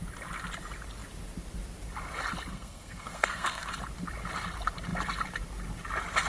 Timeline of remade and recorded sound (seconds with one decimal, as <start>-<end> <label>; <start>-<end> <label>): 0.0-2.5 recorded; 2.5-3.7 remade; 3.7-6.3 recorded